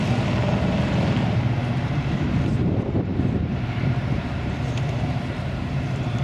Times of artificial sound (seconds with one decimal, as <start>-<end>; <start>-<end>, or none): 1.6-6.2